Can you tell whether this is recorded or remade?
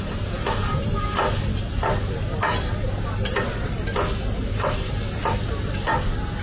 recorded